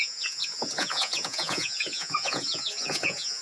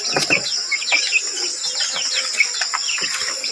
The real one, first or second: second